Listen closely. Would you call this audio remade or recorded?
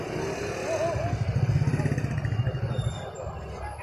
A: recorded